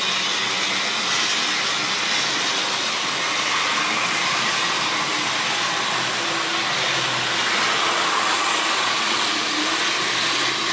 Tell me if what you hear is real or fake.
real